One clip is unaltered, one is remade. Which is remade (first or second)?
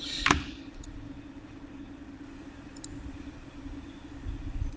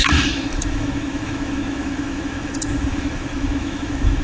second